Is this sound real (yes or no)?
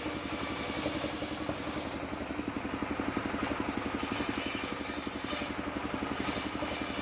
yes